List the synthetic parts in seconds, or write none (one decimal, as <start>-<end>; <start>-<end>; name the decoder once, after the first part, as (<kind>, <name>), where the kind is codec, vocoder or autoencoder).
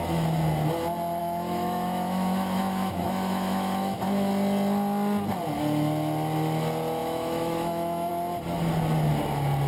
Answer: 1.2-4.3 (autoencoder, DAC-VAE); 7.0-8.1